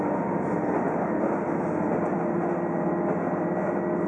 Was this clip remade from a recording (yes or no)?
no